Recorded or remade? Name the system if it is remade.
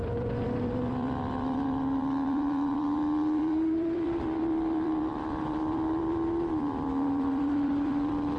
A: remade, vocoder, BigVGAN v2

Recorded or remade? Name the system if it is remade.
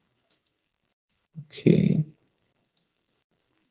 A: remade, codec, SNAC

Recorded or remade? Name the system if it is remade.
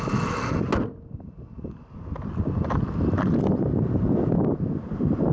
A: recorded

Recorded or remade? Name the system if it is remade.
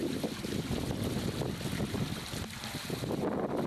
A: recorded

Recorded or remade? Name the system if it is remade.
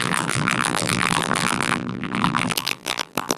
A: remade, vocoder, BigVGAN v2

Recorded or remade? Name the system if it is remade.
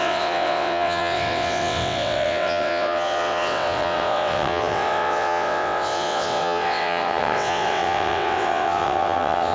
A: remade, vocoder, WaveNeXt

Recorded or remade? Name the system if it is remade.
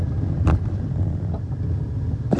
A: recorded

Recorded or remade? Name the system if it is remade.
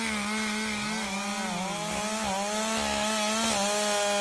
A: recorded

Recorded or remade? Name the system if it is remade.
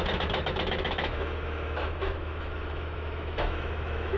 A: remade, autoencoder, DAC-VAE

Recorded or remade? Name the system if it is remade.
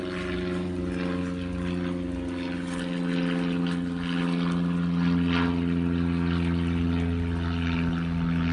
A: recorded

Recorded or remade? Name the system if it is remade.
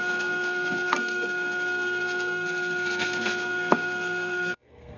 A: remade, codec, SNAC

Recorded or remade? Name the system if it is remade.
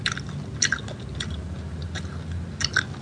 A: recorded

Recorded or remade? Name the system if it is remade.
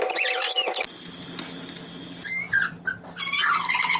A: recorded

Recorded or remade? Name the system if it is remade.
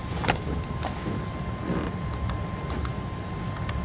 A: recorded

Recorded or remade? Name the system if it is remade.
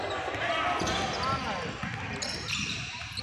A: recorded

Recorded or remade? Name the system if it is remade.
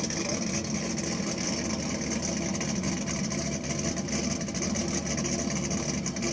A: recorded